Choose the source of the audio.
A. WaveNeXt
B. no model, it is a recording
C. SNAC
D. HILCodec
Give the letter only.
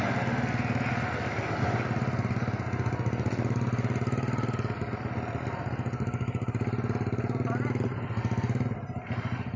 B